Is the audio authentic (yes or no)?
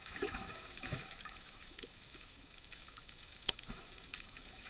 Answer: no